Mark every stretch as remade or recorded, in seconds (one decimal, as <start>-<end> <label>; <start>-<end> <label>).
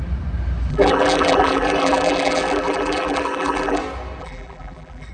0.0-0.7 recorded; 0.7-3.8 remade; 3.8-4.2 recorded; 4.2-5.1 remade